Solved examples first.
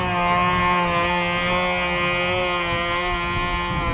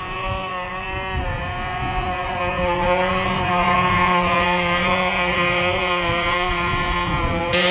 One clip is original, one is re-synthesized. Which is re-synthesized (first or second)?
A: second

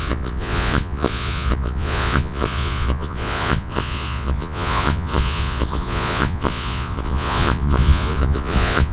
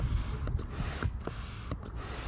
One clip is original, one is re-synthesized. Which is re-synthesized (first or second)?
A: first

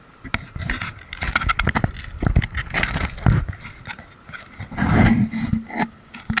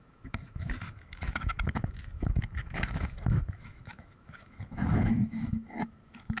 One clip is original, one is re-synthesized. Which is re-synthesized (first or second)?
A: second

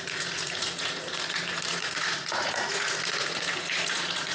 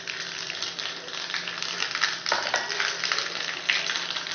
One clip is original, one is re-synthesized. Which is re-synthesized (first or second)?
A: first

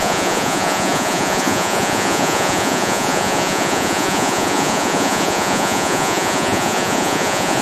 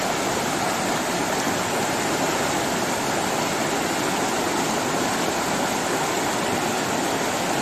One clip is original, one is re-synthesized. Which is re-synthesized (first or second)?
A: first